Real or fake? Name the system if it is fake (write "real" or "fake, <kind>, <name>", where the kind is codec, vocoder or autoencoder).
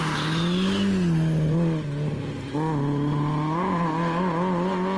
real